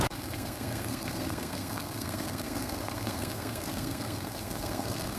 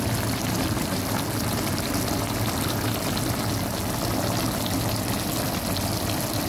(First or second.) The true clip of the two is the second